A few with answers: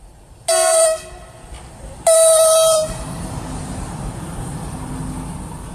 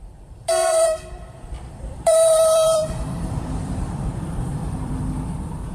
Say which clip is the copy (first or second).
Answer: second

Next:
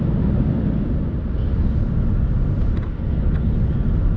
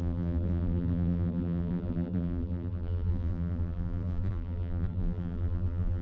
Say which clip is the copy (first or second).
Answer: second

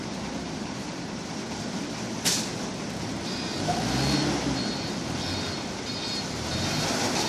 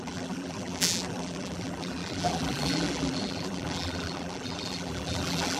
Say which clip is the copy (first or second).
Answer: second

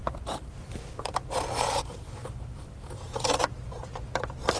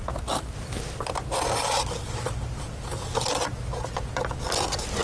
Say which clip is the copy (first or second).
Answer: first